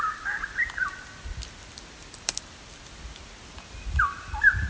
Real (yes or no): yes